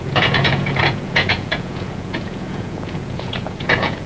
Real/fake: fake